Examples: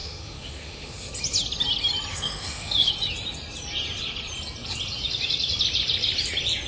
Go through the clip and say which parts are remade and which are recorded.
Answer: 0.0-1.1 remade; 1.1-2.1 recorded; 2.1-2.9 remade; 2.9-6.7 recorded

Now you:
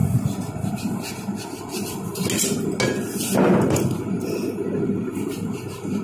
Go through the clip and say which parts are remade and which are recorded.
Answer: 0.0-6.0 recorded

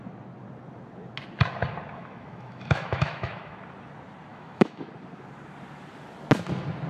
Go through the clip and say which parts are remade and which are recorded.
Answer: 0.0-1.9 recorded; 1.9-3.6 remade; 3.6-4.3 recorded; 4.3-4.9 remade; 4.9-6.9 recorded

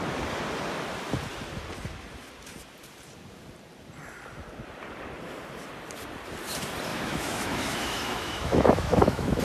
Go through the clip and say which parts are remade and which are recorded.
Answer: 0.0-6.9 recorded; 6.9-9.4 remade

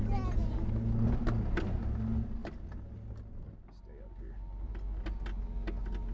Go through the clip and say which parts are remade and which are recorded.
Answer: 0.0-6.1 recorded

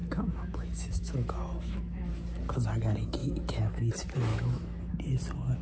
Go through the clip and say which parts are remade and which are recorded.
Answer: 0.0-2.1 remade; 2.1-3.2 recorded; 3.2-3.9 remade; 3.9-4.3 recorded; 4.3-4.9 remade; 4.9-5.6 recorded